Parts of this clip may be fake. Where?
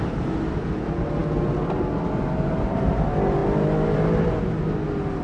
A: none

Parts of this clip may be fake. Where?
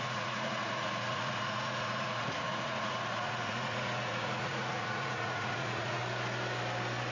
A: 0.0-6.0 (vocoder, Vocos)